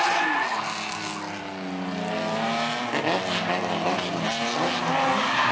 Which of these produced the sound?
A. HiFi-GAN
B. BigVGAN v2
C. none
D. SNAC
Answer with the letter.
C